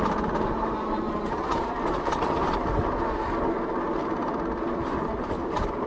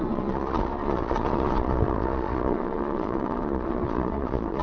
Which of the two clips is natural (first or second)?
first